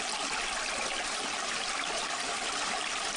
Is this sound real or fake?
real